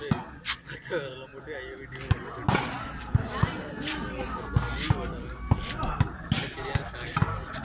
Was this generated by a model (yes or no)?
no